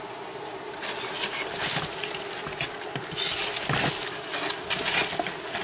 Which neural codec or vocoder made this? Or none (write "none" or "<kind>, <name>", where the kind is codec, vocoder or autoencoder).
none